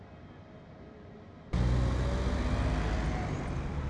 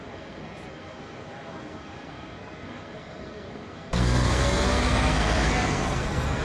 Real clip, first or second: first